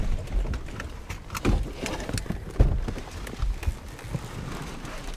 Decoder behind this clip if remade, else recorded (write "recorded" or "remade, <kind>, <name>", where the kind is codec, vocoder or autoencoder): recorded